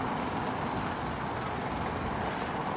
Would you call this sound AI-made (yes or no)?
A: no